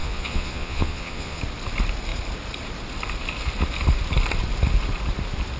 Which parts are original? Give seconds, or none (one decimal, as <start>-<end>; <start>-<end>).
1.4-5.6